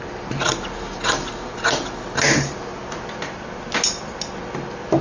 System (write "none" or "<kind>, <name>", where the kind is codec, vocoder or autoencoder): none